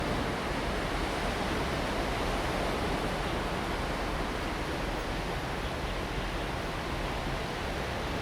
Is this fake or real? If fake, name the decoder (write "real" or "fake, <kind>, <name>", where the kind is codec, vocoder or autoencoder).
real